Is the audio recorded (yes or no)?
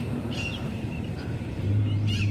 no